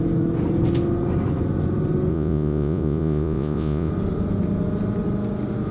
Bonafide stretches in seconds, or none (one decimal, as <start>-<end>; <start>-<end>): 0.0-2.1; 3.9-5.7